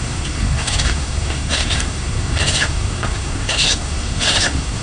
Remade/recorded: remade